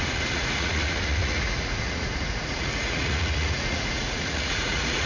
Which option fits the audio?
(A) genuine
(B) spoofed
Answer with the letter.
B